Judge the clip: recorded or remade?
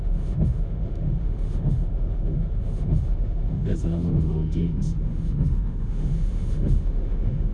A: remade